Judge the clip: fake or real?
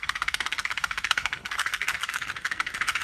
fake